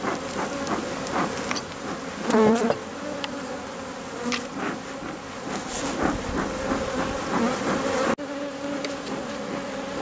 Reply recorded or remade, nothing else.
recorded